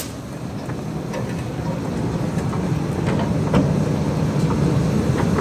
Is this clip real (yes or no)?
yes